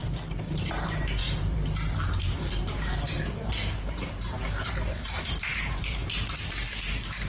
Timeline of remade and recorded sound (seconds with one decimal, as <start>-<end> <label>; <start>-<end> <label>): 0.0-7.3 remade